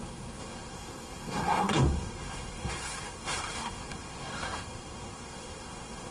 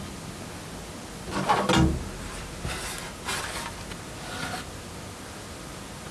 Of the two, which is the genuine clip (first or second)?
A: second